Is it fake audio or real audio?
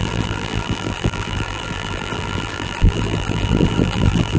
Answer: fake